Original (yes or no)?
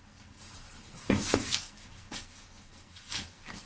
no